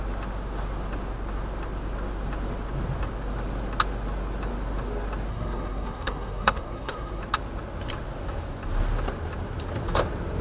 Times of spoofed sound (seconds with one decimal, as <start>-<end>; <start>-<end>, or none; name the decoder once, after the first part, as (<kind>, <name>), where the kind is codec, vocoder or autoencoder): 5.3-7.2 (codec, SNAC)